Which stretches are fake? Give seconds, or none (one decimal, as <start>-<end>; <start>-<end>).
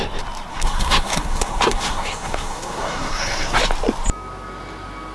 0.5-3.6